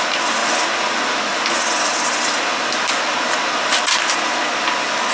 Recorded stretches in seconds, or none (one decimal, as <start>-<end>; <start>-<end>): 0.0-5.1